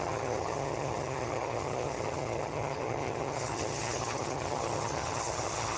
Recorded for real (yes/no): no